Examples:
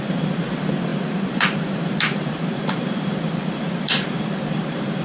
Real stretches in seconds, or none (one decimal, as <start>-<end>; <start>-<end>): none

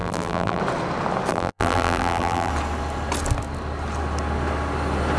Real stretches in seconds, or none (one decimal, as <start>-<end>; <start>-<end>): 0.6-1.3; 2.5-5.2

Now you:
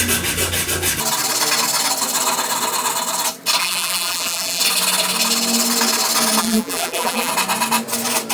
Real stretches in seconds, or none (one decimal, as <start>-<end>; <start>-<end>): 0.0-3.6; 4.6-6.4; 7.3-8.3

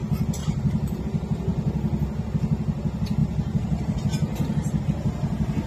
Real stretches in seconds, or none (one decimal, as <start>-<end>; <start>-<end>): 0.0-0.4; 1.0-3.2; 4.8-5.7